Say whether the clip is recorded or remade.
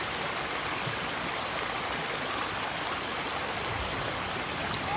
recorded